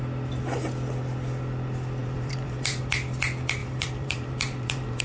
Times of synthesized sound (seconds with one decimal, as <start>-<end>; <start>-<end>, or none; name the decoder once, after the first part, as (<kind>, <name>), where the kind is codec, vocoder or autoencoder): 2.0-2.8 (vocoder, BigVGAN v2); 3.6-5.0

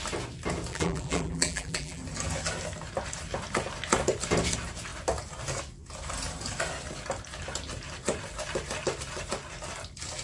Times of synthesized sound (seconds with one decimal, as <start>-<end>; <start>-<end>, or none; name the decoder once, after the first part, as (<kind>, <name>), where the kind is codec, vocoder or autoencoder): 0.7-2.0 (vocoder, BigVGAN v2)

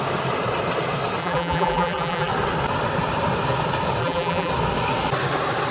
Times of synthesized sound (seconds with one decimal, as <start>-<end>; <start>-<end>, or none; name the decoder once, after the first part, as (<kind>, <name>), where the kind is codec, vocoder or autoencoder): 1.2-2.3 (vocoder, BigVGAN v2); 4.0-4.5

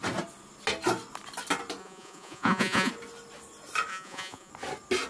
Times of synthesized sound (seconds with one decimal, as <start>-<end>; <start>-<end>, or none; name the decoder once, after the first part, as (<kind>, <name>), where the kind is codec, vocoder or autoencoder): 1.8-2.9 (vocoder, Vocos); 3.9-4.5

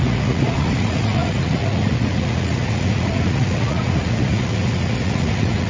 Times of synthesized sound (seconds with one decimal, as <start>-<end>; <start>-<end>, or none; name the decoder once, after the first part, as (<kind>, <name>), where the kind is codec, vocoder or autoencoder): 0.0-5.7 (vocoder, Vocos)

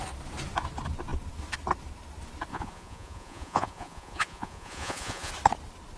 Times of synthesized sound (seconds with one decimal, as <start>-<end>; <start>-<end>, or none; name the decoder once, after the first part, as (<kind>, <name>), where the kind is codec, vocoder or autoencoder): 2.5-5.3 (vocoder, Vocos)